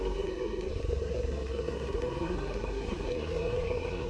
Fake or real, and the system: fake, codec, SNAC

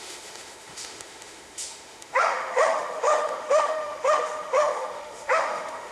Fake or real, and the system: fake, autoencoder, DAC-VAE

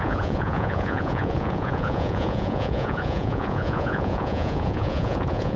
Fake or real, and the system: fake, vocoder, Vocos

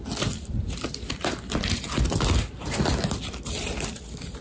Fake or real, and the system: real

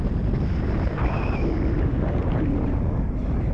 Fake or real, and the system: real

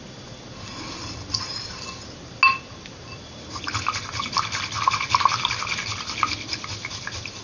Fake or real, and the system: real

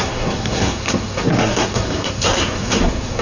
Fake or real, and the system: fake, codec, SNAC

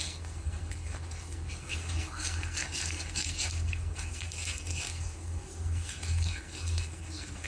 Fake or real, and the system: fake, codec, SNAC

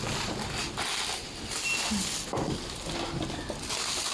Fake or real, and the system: real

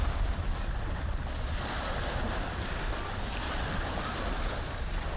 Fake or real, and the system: real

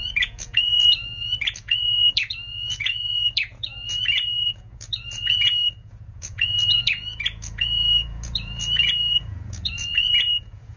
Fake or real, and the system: fake, vocoder, Vocos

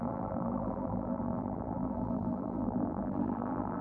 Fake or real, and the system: fake, vocoder, BigVGAN v2